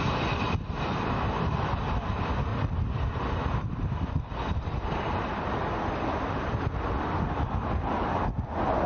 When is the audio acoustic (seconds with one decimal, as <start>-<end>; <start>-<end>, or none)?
0.0-2.5; 7.2-8.9